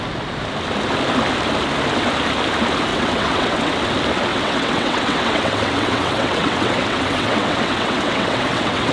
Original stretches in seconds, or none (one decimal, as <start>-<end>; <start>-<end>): 0.0-2.9; 3.7-4.3